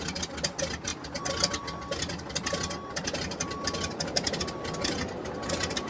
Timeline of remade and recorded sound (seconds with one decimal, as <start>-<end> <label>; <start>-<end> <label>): 0.0-5.9 recorded